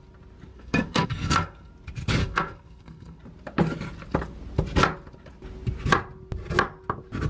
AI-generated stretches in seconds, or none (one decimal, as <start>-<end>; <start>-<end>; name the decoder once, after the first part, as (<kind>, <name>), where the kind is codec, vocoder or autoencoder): 0.5-1.7 (codec, SNAC); 2.2-3.2